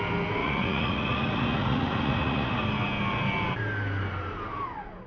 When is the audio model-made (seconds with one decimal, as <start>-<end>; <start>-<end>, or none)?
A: 0.4-2.6